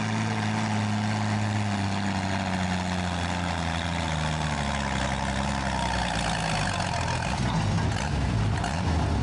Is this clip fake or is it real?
real